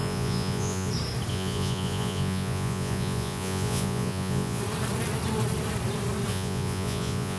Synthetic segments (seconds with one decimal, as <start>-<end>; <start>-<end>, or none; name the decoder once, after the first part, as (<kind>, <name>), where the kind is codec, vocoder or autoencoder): 0.0-0.9 (vocoder, Vocos); 1.3-4.6; 6.3-7.4